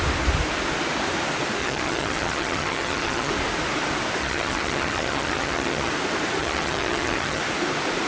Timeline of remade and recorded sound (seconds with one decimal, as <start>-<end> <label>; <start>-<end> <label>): 0.0-1.6 recorded; 1.6-3.3 remade; 3.3-4.2 recorded; 4.2-5.9 remade; 5.9-6.4 recorded; 6.4-7.4 remade; 7.4-8.1 recorded